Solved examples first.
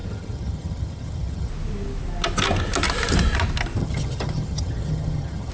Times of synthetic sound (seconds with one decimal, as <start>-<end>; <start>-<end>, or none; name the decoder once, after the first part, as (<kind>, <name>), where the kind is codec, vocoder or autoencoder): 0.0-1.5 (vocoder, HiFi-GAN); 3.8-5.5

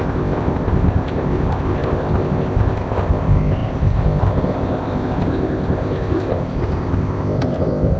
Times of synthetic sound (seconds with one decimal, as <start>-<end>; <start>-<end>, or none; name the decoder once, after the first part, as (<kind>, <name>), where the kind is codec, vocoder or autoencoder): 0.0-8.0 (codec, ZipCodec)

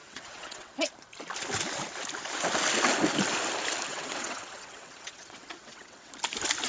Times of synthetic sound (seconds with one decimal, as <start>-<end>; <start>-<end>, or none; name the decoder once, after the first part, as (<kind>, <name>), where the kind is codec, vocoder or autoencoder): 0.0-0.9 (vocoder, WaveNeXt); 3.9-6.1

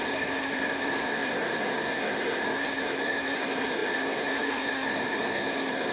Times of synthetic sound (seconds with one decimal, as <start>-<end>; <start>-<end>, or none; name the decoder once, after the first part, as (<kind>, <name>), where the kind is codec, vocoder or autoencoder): 0.0-5.9 (codec, SNAC)